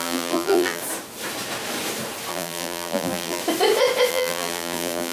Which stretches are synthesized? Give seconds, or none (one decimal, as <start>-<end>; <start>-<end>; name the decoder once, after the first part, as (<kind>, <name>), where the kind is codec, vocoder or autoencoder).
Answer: 0.0-0.8 (vocoder, BigVGAN v2); 2.3-3.4; 4.1-5.1